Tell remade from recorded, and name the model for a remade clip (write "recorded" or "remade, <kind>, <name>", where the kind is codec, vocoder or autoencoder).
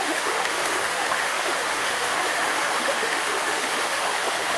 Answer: remade, autoencoder, DAC-VAE